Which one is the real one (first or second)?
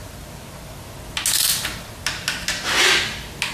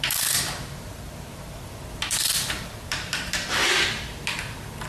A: first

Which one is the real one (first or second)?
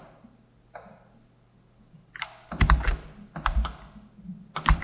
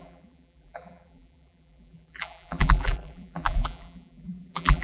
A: first